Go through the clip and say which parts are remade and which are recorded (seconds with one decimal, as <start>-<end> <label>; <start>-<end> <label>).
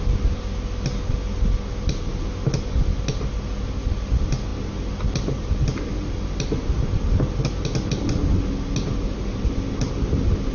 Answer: 0.0-10.5 recorded